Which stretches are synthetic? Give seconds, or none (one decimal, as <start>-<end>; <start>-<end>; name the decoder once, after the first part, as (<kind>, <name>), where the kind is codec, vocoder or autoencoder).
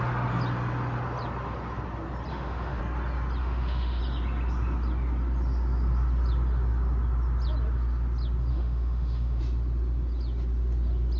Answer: 2.3-2.8 (autoencoder, DAC-VAE); 3.4-4.0; 8.5-9.4